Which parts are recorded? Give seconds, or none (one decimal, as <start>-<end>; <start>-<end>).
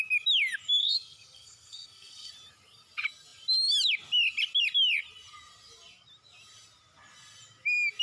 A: 0.0-0.8; 2.3-8.0